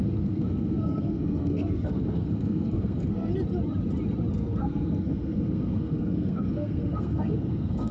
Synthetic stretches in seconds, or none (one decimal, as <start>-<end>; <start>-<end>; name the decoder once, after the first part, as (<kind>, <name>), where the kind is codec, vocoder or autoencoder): 0.0-3.3 (codec, SNAC); 4.3-7.9